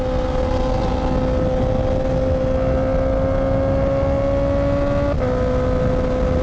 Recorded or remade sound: recorded